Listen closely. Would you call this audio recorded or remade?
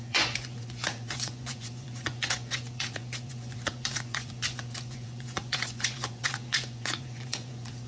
remade